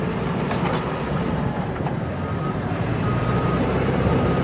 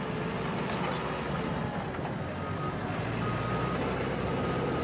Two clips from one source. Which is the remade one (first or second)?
first